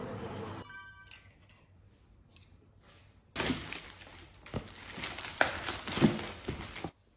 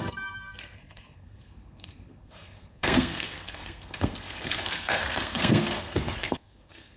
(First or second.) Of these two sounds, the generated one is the second